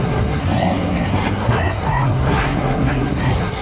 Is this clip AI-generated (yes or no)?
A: yes